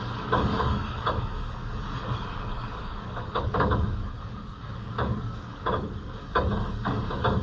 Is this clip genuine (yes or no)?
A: no